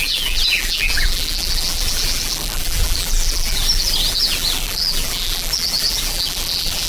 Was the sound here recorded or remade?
remade